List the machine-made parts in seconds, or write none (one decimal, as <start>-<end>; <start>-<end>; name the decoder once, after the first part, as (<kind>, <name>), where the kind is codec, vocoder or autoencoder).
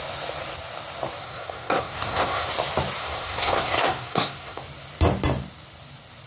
1.2-2.5 (codec, SNAC); 3.0-4.6